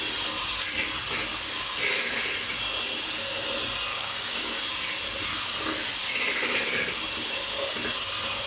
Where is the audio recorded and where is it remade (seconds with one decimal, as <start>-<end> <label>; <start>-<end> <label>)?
0.0-3.9 recorded; 3.9-4.8 remade; 4.8-8.5 recorded